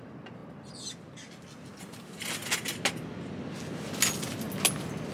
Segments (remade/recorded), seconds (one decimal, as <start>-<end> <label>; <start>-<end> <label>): 0.0-5.1 recorded

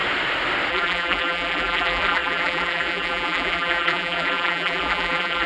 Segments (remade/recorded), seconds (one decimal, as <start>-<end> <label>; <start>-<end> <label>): 0.0-0.7 recorded; 0.7-5.5 remade

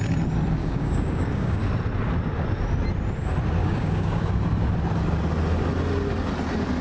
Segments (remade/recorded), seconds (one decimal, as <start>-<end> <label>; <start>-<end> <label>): 0.0-0.6 recorded; 0.6-1.6 remade; 1.6-3.6 recorded; 3.6-4.3 remade; 4.3-6.8 recorded

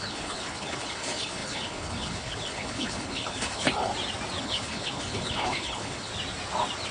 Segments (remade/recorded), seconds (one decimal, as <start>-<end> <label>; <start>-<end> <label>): 0.0-3.9 remade; 3.9-4.4 recorded; 4.4-6.1 remade; 6.1-6.9 recorded

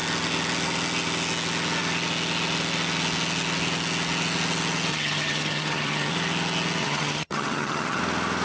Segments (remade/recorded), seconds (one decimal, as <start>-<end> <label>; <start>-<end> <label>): 0.0-4.9 recorded; 4.9-6.1 remade; 6.1-6.8 recorded; 6.8-8.0 remade; 8.0-8.4 recorded